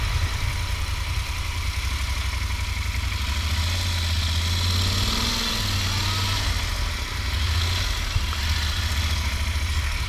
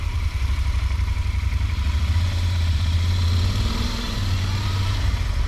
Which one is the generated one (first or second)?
second